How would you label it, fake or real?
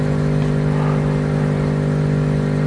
real